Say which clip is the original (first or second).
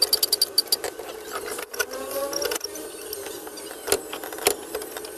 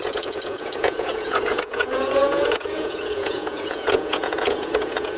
first